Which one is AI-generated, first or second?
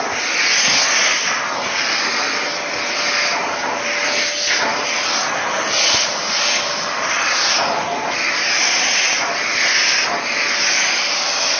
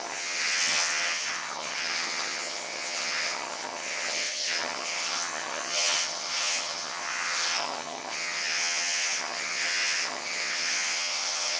second